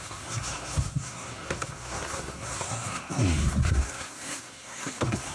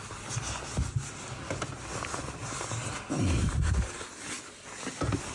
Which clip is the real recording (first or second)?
second